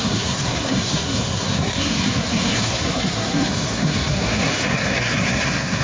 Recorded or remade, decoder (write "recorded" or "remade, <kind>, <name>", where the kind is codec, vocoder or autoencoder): remade, codec, SNAC